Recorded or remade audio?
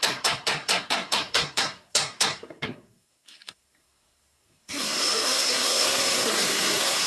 remade